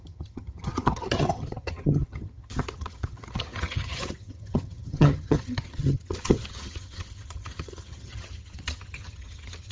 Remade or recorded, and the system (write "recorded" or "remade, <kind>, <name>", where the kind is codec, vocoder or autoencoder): remade, vocoder, HiFi-GAN